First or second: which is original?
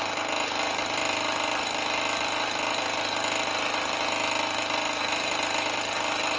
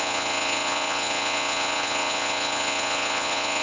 first